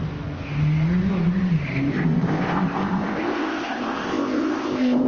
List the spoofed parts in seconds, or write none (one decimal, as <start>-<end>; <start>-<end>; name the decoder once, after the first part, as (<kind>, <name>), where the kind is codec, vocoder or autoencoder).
1.9-5.1 (codec, ZipCodec)